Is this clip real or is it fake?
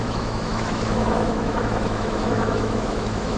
fake